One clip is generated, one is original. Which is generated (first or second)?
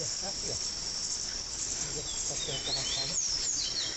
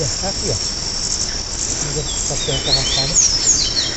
first